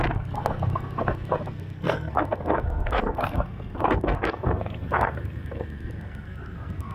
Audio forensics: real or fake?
fake